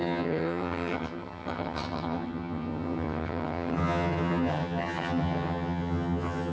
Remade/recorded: remade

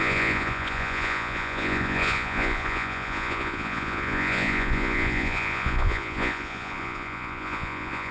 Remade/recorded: remade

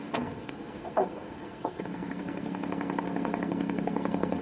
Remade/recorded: remade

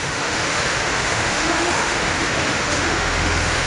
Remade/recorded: remade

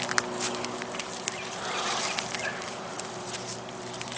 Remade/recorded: recorded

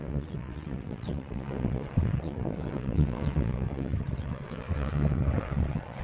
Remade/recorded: remade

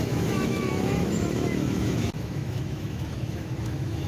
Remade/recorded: remade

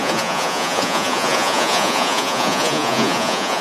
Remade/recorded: remade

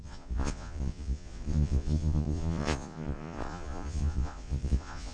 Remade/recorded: remade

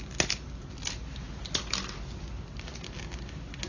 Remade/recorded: recorded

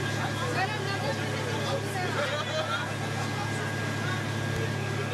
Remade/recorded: recorded